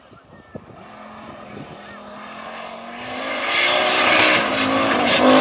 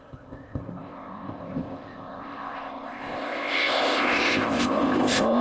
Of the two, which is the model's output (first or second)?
second